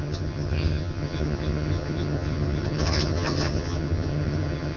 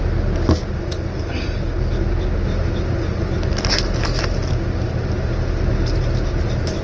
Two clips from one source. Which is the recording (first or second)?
second